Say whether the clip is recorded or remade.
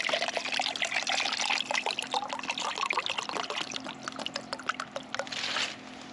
recorded